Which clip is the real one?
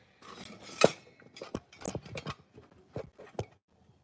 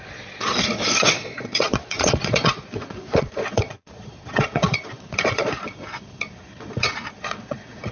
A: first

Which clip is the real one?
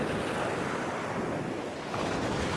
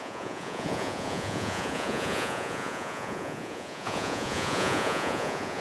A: first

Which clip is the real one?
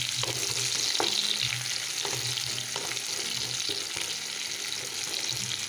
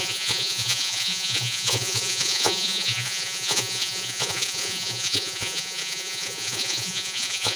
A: first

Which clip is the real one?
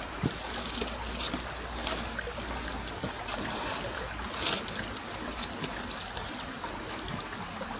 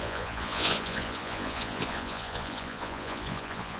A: first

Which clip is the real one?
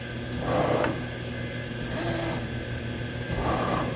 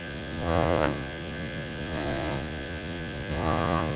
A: first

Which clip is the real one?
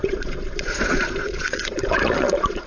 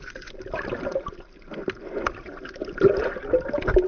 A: second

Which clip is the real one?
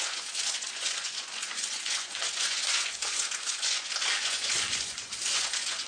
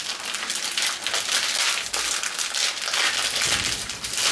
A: second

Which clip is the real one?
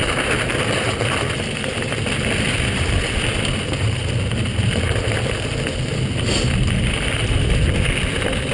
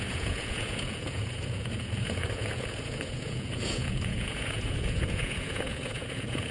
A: first